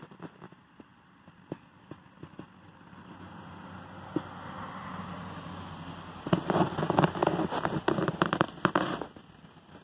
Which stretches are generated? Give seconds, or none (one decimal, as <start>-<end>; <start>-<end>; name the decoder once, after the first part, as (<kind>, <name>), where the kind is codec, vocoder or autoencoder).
none